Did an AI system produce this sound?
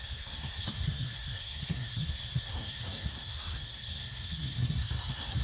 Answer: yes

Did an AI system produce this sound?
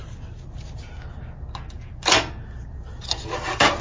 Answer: no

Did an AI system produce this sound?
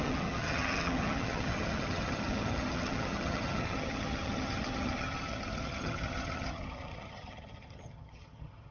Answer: yes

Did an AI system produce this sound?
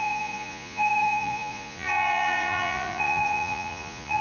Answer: yes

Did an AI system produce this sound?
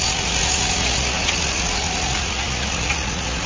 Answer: yes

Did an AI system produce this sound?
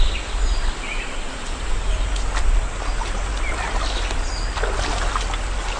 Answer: no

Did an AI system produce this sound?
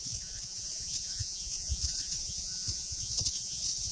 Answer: yes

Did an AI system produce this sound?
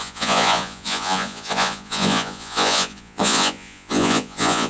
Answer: yes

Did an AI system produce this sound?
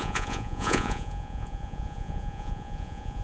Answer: yes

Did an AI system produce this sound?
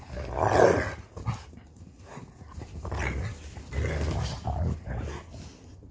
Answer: no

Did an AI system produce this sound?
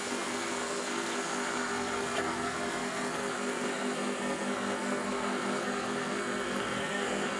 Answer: yes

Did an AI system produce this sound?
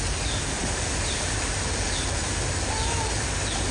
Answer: yes